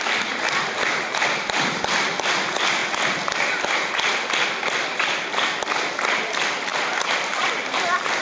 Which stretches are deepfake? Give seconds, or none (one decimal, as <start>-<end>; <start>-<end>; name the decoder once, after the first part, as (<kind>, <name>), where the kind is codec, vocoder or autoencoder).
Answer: none